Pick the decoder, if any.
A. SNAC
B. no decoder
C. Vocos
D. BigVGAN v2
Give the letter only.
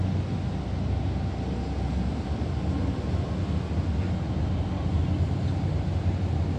B